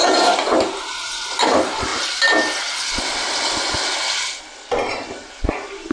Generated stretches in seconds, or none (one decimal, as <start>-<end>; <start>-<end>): none